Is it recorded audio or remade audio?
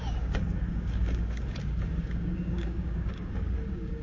remade